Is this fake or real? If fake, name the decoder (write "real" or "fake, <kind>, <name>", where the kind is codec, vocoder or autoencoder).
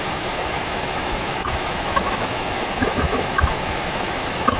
fake, autoencoder, DAC-VAE